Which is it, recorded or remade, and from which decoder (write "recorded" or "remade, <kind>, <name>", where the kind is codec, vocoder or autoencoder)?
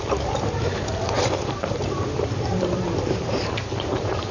remade, vocoder, BigVGAN v2